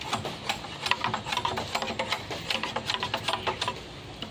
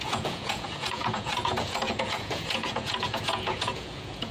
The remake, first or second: second